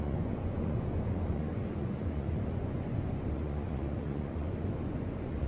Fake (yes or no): yes